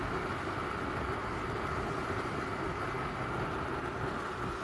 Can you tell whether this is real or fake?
real